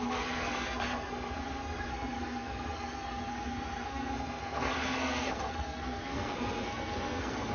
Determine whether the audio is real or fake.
fake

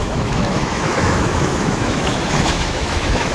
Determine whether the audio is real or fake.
fake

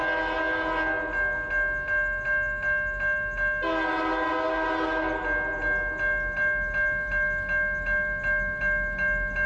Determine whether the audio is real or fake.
real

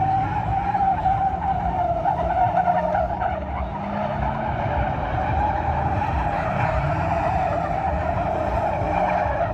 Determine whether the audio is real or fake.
real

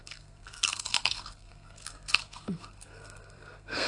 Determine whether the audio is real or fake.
fake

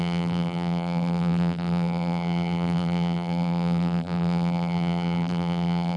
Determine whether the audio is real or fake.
fake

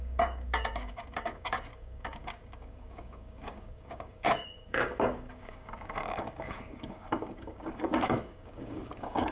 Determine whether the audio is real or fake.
fake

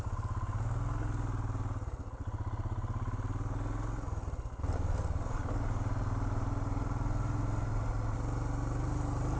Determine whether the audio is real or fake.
real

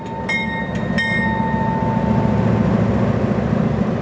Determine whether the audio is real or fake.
real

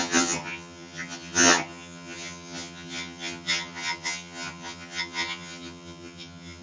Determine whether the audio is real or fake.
fake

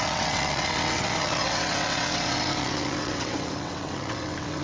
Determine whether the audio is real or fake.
fake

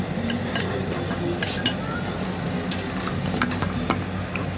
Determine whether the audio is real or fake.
real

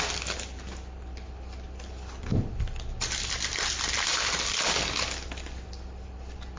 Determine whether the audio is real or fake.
real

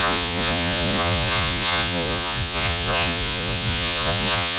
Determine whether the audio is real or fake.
fake